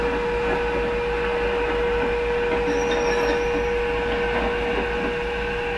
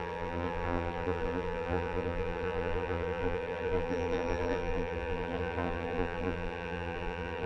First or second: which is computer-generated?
second